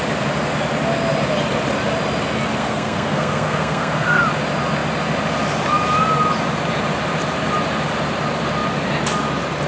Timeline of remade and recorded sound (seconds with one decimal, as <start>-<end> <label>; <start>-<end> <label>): 0.0-2.6 recorded; 2.6-4.2 remade; 4.2-9.7 recorded